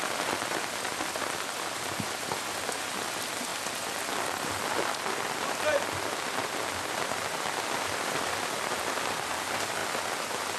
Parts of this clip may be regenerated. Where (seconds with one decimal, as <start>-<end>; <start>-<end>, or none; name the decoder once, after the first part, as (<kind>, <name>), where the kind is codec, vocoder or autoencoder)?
0.0-3.5 (vocoder, BigVGAN v2); 4.4-9.8